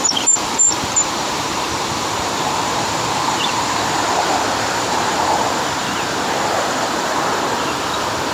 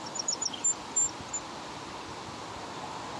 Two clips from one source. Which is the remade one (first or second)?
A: first